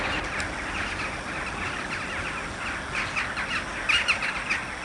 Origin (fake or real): real